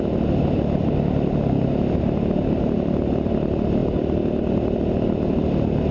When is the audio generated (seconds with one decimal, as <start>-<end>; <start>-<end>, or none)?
none